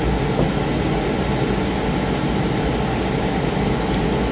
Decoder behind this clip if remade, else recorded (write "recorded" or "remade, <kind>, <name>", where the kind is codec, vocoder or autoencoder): recorded